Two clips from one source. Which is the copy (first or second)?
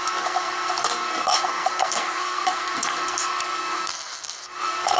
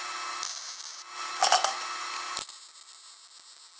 first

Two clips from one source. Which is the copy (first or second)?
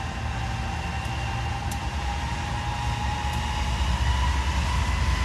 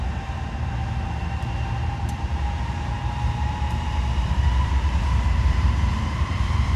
second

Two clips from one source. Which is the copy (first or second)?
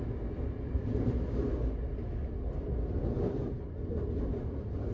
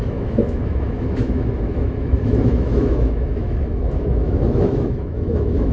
second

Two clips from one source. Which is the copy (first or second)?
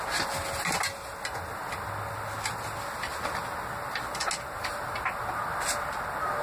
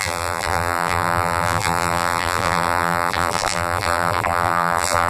second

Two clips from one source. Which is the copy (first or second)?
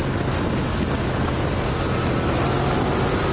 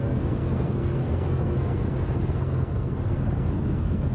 second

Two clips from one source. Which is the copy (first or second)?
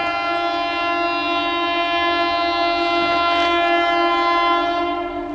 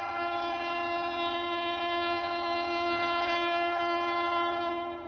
second